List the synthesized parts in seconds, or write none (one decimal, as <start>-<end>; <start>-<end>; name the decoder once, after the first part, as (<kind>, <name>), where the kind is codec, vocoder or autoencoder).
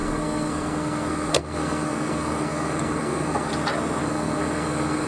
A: 0.0-3.5 (codec, SNAC); 4.0-5.1